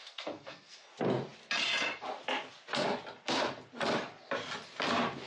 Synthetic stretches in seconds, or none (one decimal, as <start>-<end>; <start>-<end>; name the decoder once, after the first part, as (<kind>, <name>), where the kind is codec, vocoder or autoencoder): 0.0-0.9 (codec, SNAC)